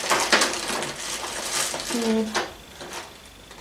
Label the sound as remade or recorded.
recorded